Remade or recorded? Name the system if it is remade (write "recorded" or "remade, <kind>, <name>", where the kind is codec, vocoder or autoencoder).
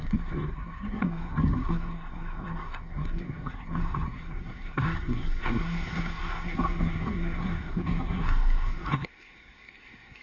remade, codec, SNAC